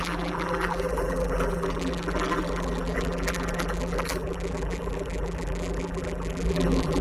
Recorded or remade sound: remade